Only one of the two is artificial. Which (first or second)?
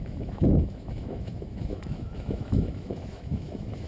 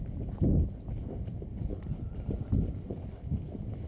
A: first